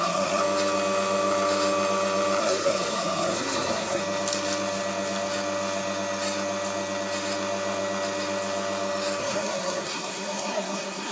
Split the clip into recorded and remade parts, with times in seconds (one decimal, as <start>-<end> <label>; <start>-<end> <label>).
0.0-0.4 remade; 0.4-2.4 recorded; 2.4-4.0 remade; 4.0-9.2 recorded; 9.2-11.1 remade